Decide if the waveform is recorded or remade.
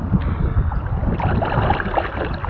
recorded